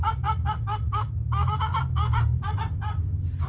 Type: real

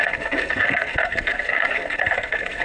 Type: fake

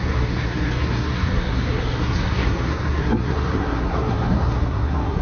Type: fake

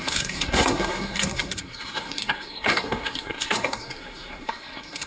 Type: fake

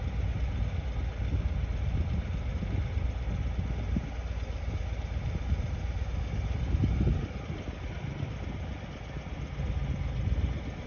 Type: real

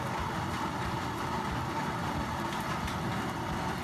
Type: real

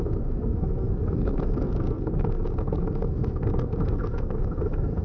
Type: fake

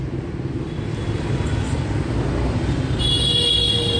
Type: real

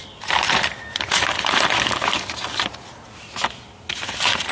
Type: real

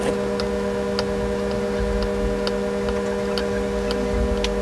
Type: real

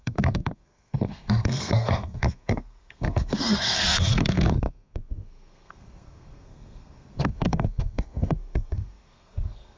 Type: fake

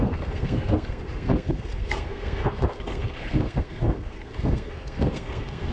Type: fake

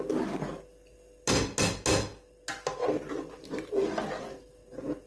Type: real